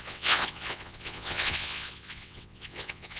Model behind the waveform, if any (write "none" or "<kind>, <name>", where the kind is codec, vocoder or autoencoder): vocoder, WaveNeXt